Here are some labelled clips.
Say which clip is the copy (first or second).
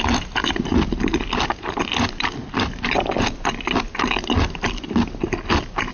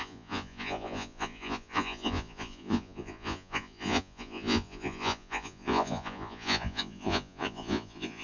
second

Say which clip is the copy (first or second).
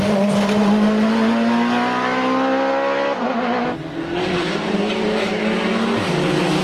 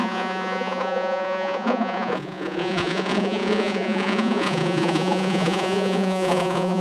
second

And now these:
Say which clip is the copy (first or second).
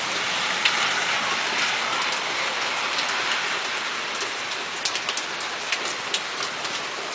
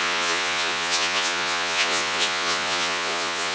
second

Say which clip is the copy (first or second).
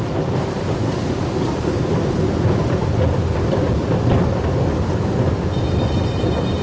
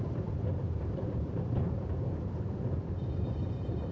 second